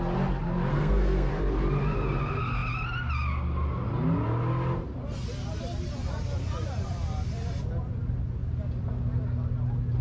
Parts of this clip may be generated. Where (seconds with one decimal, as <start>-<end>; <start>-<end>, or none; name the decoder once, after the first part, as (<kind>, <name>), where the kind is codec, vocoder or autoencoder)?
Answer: 0.7-1.3 (codec, SNAC)